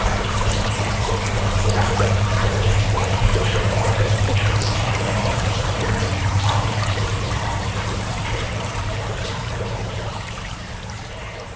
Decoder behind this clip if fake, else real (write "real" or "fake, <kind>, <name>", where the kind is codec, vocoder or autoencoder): fake, vocoder, BigVGAN v2